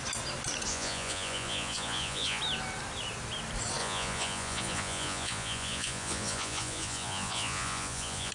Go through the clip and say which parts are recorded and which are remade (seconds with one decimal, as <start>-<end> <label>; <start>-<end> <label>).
0.0-0.7 recorded; 0.7-2.4 remade; 2.4-3.8 recorded; 3.8-8.3 remade